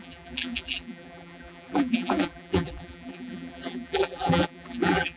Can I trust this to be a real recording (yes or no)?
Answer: no